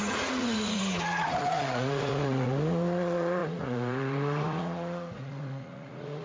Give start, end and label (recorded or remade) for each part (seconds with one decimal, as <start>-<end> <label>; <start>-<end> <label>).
0.0-6.2 remade